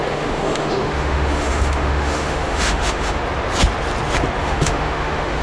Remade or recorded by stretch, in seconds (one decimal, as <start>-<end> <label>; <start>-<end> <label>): 0.0-3.2 remade; 3.2-4.4 recorded; 4.4-5.4 remade